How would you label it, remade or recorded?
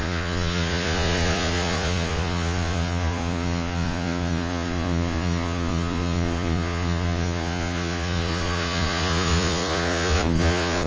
remade